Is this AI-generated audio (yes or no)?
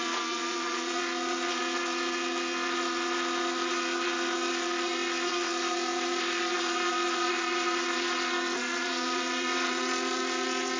yes